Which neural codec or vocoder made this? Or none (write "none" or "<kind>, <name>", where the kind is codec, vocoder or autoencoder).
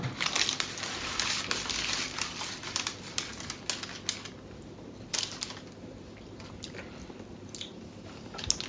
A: none